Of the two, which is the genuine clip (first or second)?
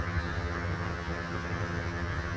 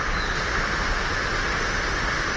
second